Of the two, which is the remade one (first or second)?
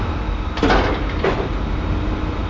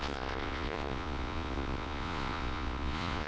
second